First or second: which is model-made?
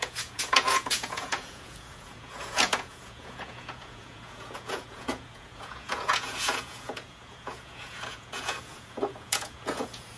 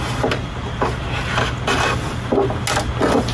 first